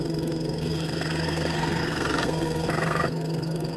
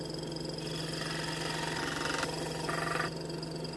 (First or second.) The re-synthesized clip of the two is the first